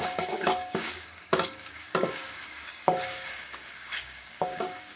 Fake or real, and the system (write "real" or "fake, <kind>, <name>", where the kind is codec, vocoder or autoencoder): fake, codec, DAC